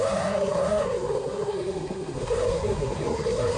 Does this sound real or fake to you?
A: fake